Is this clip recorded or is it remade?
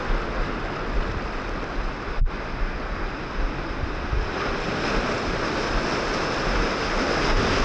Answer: recorded